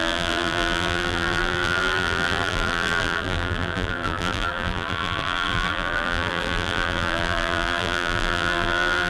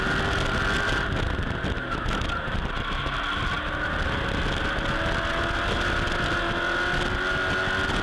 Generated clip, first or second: first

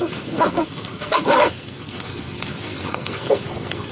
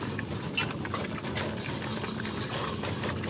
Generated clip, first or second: first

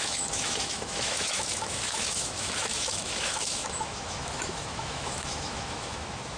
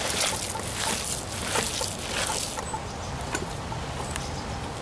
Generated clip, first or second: first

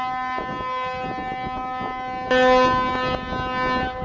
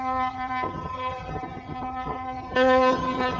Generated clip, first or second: second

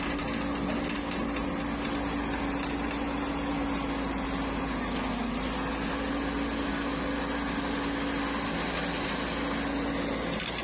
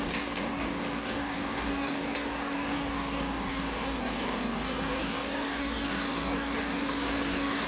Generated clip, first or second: second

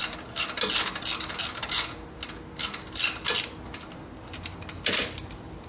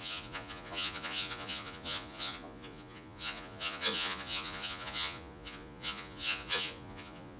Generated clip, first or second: second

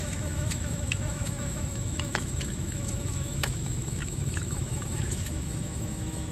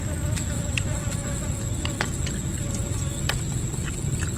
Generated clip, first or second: first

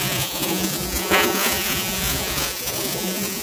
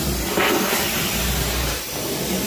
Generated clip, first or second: first